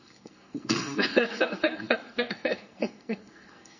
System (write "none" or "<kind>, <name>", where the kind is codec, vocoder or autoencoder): codec, SNAC